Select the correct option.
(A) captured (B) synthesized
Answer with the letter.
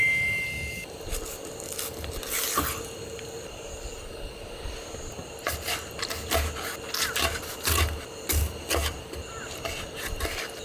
A